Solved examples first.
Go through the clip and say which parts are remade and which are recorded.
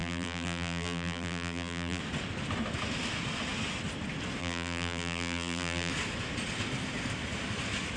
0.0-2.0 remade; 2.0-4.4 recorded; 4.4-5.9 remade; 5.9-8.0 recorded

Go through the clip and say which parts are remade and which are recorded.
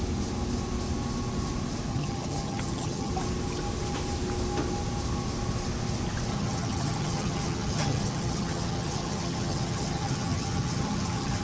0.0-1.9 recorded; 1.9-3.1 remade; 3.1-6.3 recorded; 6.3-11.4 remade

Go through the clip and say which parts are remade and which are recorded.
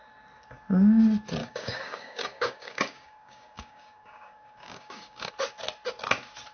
0.0-1.4 recorded; 1.4-5.3 remade; 5.3-6.5 recorded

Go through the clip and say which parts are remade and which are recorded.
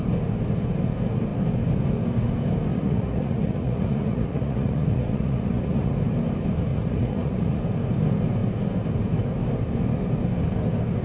0.0-2.7 recorded; 2.7-5.9 remade; 5.9-6.7 recorded; 6.7-7.6 remade; 7.6-11.0 recorded